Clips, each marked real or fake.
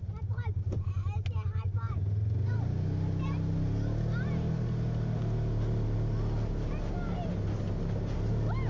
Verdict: real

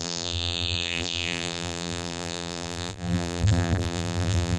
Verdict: fake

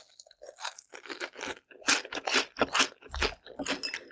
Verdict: real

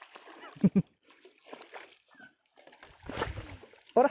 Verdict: real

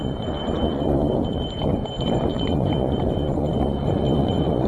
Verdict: fake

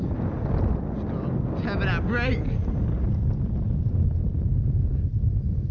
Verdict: real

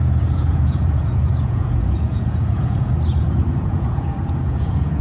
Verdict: fake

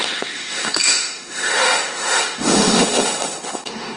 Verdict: fake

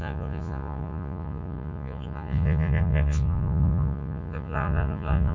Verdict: fake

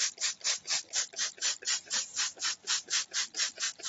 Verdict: fake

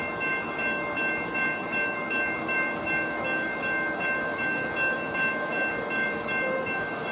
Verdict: fake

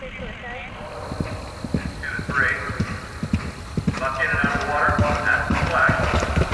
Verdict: real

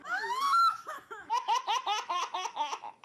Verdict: fake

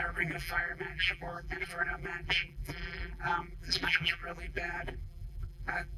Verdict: fake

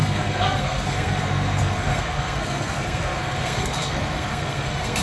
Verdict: fake